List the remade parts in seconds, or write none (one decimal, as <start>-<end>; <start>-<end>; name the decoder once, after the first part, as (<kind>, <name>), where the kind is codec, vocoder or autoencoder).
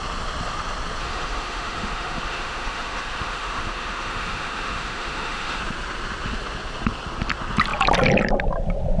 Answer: 1.0-5.6 (autoencoder, DAC-VAE)